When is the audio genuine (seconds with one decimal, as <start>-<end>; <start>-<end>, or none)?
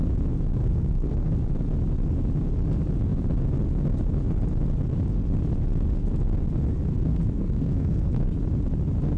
0.0-0.6; 1.3-6.9; 8.2-9.2